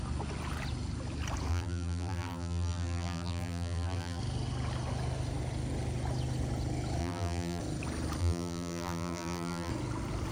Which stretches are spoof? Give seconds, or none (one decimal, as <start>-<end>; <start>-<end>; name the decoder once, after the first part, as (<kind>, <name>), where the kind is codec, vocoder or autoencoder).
1.5-4.2 (vocoder, BigVGAN v2); 7.0-7.6; 8.2-9.7